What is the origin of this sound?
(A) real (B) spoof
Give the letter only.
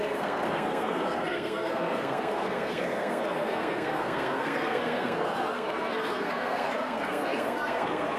B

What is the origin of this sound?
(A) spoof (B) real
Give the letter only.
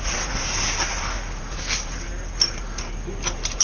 B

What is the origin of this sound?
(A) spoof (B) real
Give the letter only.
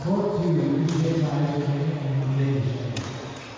B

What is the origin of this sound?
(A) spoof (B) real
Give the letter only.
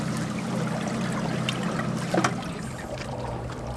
B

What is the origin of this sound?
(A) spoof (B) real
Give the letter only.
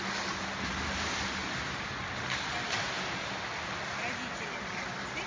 B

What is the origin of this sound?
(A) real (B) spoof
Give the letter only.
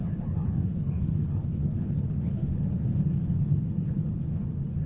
B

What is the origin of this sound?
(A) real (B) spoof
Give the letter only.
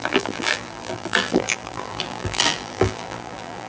B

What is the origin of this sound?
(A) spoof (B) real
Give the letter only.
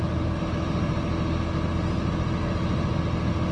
B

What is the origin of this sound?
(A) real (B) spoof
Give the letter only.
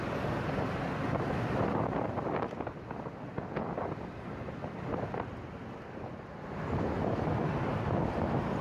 A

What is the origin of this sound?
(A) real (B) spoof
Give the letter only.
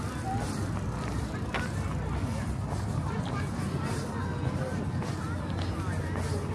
A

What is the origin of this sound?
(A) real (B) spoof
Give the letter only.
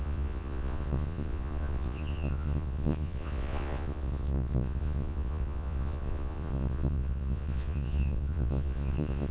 B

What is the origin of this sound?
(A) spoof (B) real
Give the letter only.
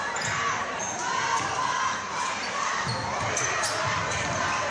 A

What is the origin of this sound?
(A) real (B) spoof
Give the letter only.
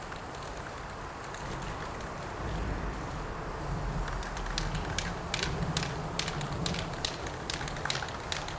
A